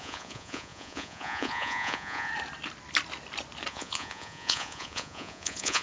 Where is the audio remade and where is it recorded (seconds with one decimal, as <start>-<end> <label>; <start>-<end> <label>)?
0.0-2.3 remade; 2.3-3.7 recorded; 3.7-5.8 remade